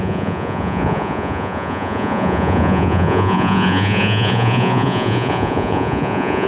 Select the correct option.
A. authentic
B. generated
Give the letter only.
B